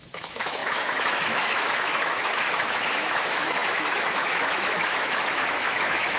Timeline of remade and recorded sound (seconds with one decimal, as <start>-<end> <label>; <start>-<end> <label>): 0.0-6.2 remade